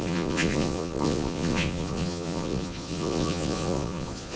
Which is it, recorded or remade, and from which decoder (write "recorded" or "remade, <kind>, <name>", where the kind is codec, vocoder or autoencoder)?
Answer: remade, vocoder, Vocos